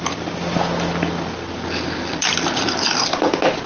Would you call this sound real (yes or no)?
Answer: yes